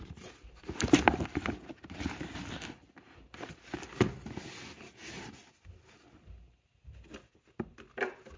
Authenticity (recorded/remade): recorded